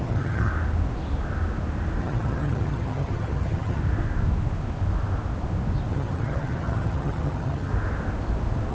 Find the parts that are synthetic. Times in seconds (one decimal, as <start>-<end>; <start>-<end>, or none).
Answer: 0.0-0.5; 2.0-3.8; 5.9-7.7